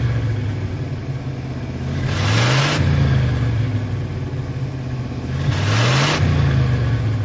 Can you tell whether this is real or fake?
real